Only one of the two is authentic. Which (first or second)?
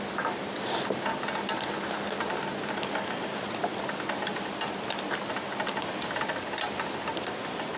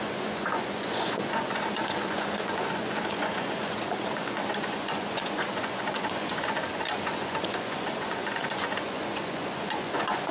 first